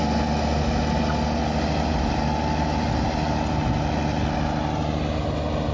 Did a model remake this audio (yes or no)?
no